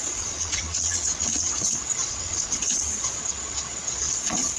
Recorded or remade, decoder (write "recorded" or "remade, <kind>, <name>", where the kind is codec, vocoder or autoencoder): remade, vocoder, Vocos